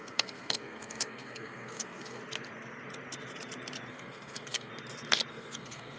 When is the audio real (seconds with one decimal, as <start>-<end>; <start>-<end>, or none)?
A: 2.2-3.9; 4.7-5.3